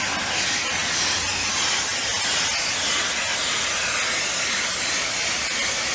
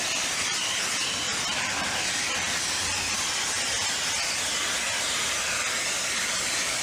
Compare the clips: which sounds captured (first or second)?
first